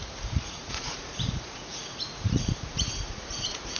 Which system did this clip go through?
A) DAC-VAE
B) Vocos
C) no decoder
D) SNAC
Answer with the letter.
B